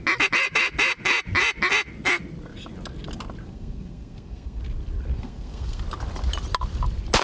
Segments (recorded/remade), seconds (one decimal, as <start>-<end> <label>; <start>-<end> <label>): 0.0-3.4 recorded; 3.4-4.6 remade; 4.6-5.1 recorded; 5.1-5.8 remade; 5.8-7.2 recorded